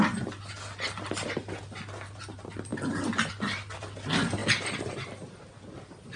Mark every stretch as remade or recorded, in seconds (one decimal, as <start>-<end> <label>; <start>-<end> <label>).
0.0-6.2 recorded